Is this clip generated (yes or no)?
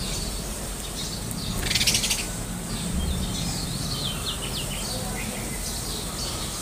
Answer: no